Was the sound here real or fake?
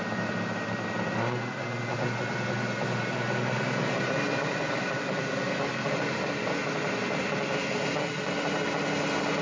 real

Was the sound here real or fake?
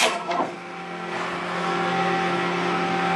fake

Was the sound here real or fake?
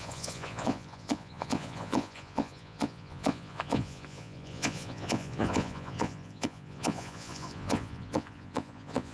fake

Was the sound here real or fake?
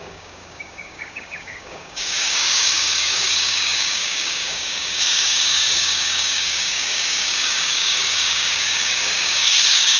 fake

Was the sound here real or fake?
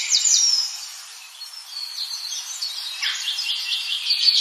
fake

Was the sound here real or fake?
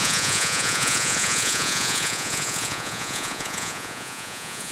fake